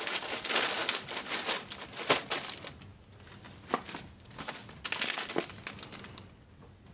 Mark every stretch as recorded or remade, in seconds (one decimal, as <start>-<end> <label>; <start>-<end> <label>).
0.0-6.9 recorded